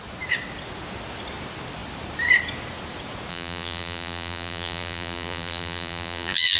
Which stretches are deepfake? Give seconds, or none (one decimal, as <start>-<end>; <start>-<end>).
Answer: 3.3-6.6